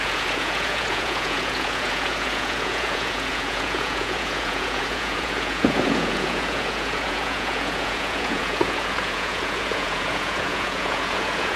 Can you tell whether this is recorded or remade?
remade